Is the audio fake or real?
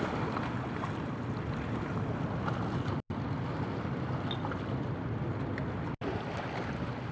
real